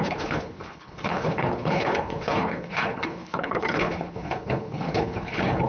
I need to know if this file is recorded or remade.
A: remade